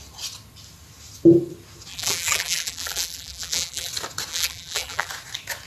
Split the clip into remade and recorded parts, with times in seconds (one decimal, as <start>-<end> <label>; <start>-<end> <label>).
0.0-1.9 recorded; 1.9-3.9 remade; 3.9-4.3 recorded; 4.3-5.1 remade; 5.1-5.7 recorded

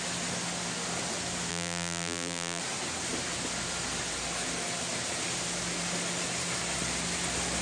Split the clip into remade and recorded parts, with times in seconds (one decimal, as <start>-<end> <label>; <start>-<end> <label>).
0.0-1.5 recorded; 1.5-2.6 remade; 2.6-7.6 recorded

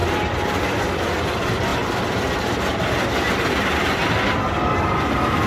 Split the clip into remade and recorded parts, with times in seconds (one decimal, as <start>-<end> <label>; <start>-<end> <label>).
0.0-0.8 remade; 0.8-5.5 recorded

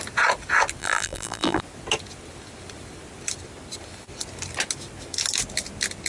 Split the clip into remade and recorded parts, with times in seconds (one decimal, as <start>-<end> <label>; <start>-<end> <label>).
0.0-0.8 recorded; 0.8-1.6 remade; 1.6-6.1 recorded

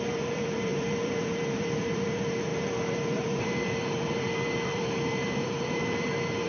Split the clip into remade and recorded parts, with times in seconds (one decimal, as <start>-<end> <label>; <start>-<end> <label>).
0.0-6.5 remade

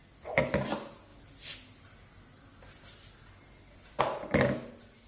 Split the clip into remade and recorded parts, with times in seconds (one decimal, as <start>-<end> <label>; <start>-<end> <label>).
0.0-5.1 recorded

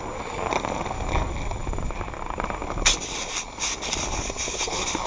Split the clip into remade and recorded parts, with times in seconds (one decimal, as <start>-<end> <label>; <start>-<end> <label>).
0.0-5.1 recorded

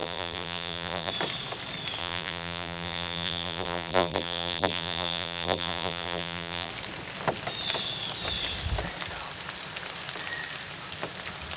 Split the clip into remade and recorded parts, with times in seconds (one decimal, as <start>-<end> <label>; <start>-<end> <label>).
0.0-1.1 remade; 1.1-2.0 recorded; 2.0-6.7 remade; 6.7-11.6 recorded